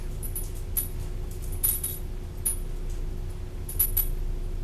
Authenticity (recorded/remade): recorded